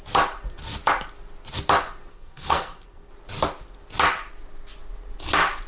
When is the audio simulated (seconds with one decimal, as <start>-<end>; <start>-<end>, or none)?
2.1-3.1